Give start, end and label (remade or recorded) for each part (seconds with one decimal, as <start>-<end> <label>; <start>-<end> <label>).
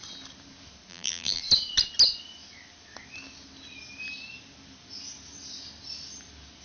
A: 0.0-0.9 recorded; 0.9-1.4 remade; 1.4-6.6 recorded